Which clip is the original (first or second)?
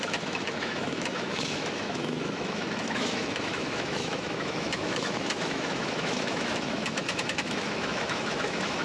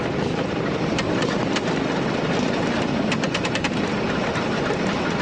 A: second